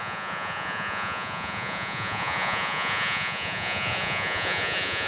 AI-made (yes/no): yes